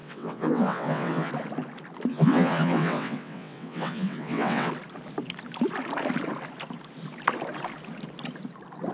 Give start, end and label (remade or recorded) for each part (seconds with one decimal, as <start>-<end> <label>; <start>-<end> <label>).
0.0-1.3 remade; 1.3-2.1 recorded; 2.1-4.7 remade; 4.7-8.9 recorded